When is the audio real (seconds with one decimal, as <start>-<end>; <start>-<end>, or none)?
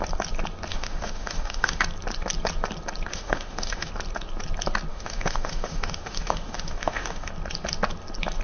0.0-0.7; 1.8-3.1; 3.9-4.9; 7.3-8.4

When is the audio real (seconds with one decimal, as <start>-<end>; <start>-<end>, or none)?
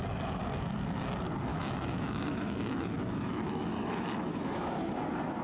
0.0-1.5; 4.7-5.4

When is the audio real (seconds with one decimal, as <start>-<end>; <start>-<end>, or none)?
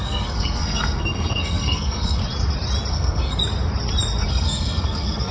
2.2-2.9; 3.4-4.3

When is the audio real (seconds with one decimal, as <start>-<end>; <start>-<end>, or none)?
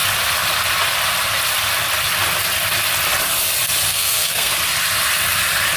0.0-3.9; 4.5-5.8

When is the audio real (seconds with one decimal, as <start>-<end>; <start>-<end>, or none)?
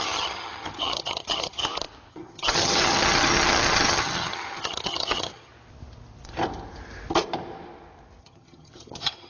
1.6-2.1; 5.5-8.2